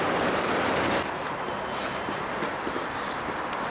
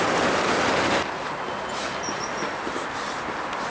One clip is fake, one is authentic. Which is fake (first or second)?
first